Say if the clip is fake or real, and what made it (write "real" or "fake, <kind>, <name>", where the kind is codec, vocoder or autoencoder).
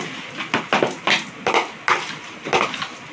real